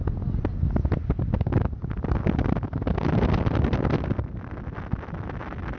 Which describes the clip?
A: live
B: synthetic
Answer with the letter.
A